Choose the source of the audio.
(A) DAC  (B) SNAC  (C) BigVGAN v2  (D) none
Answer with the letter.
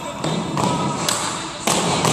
D